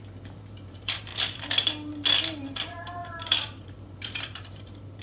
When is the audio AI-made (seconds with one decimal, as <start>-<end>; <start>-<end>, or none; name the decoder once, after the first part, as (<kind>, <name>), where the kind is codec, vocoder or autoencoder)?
0.0-1.1 (vocoder, BigVGAN v2); 2.6-5.0